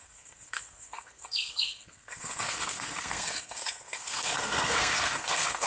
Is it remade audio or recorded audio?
remade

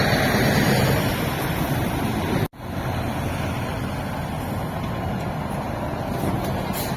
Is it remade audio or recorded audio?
recorded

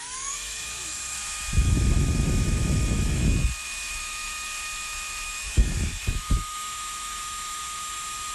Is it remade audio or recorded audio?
remade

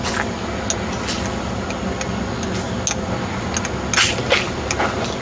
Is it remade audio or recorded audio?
recorded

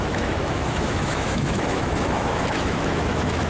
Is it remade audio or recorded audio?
remade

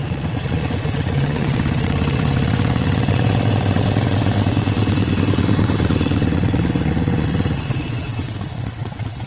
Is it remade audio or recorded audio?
remade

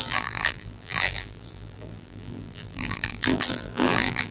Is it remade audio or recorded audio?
remade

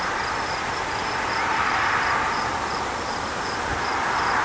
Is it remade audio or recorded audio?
recorded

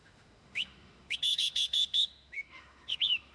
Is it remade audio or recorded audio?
remade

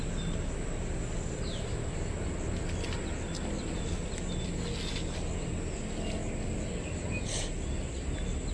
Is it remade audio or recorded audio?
recorded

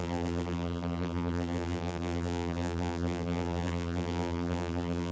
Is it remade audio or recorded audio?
remade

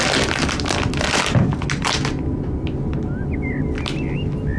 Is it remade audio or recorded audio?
recorded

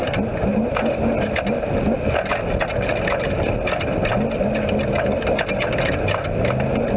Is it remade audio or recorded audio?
recorded